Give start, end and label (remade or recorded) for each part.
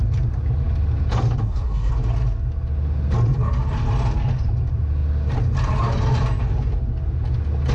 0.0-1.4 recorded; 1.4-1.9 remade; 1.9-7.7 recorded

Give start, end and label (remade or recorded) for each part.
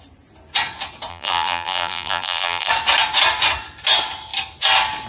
0.0-1.1 recorded; 1.1-2.7 remade; 2.7-5.1 recorded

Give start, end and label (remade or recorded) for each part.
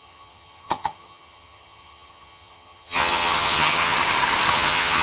0.0-4.0 remade; 4.0-4.5 recorded; 4.5-5.0 remade